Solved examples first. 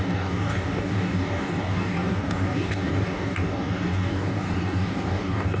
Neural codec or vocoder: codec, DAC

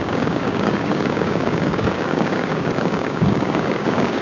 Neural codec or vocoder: codec, DAC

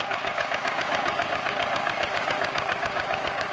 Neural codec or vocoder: codec, DAC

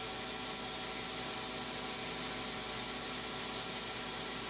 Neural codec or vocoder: none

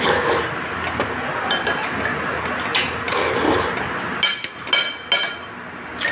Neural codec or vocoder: none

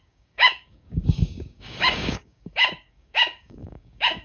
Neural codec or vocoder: codec, DAC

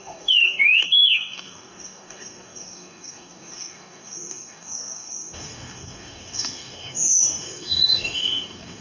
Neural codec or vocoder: codec, DAC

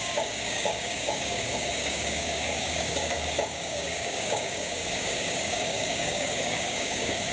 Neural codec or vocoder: codec, DAC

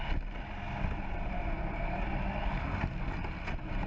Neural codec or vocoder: none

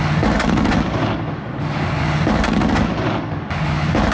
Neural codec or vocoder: codec, DAC